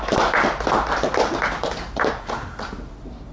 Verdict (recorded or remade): recorded